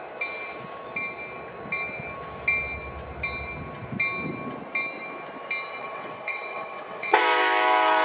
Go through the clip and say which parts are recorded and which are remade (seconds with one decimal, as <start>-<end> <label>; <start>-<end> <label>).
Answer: 0.0-5.8 recorded; 5.8-7.2 remade; 7.2-8.0 recorded